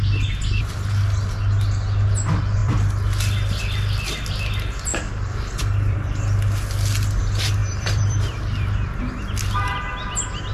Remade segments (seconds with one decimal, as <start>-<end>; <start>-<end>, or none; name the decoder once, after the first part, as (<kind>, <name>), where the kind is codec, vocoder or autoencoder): 4.9-6.2 (vocoder, BigVGAN v2); 7.6-9.0